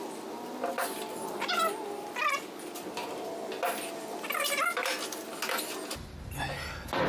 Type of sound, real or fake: real